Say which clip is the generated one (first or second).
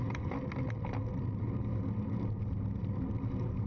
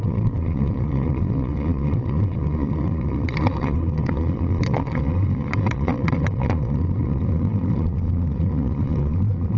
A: second